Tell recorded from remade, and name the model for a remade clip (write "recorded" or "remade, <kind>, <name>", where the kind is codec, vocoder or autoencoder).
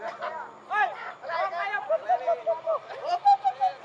recorded